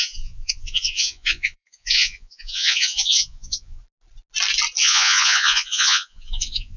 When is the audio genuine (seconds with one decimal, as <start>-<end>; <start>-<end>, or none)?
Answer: 3.8-4.8